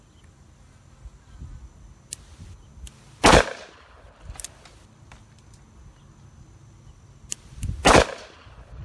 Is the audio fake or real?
real